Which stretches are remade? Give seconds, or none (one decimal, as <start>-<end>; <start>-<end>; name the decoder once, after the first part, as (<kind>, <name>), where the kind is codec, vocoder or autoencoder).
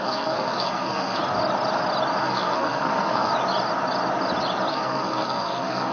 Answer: 0.0-1.2 (codec, SNAC); 2.2-3.3; 4.7-5.9